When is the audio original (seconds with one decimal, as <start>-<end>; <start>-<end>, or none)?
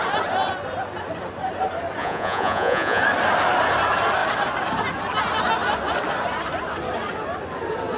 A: 0.0-2.0; 3.0-8.0